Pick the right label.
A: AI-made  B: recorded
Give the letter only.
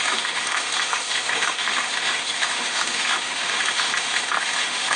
A